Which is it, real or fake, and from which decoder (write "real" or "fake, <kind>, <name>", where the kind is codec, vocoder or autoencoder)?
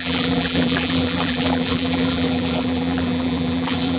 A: fake, vocoder, BigVGAN v2